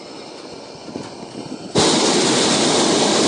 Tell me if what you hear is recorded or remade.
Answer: recorded